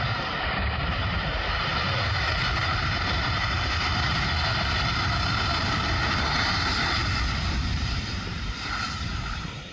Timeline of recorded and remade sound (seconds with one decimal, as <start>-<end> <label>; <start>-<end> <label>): 0.0-9.7 remade

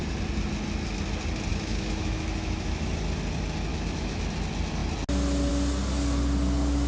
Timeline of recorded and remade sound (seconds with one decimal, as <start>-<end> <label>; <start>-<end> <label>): 0.0-1.5 recorded; 1.5-2.9 remade; 2.9-3.7 recorded; 3.7-4.2 remade; 4.2-6.9 recorded

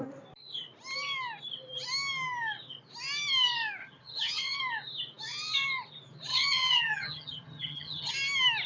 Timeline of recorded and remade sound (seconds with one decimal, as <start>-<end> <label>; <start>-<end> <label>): 0.0-3.8 recorded; 3.8-4.6 remade; 4.6-6.3 recorded; 6.3-8.1 remade; 8.1-8.7 recorded

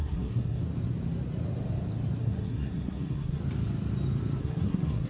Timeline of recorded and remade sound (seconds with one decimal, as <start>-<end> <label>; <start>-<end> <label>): 0.0-0.6 remade; 0.6-2.2 recorded; 2.2-3.4 remade; 3.4-4.4 recorded; 4.4-5.1 remade

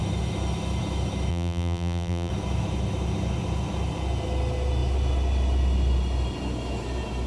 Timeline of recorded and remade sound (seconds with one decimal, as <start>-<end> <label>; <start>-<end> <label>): 0.0-1.3 recorded; 1.3-2.3 remade; 2.3-7.3 recorded

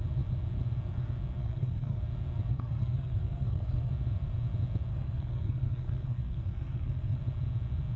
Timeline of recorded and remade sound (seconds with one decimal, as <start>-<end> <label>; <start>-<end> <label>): 0.0-1.4 recorded; 1.4-2.0 remade; 2.0-2.5 recorded; 2.5-3.9 remade; 3.9-4.9 recorded; 4.9-7.2 remade; 7.2-8.0 recorded

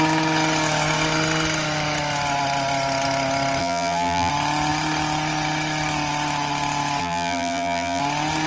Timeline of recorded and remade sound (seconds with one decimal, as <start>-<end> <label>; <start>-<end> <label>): 0.0-3.6 recorded; 3.6-4.3 remade; 4.3-7.0 recorded; 7.0-8.0 remade; 8.0-8.5 recorded

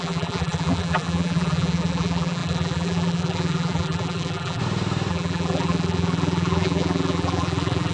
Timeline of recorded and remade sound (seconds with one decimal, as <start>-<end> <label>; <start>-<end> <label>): 0.0-4.6 remade; 4.6-5.1 recorded; 5.1-7.9 remade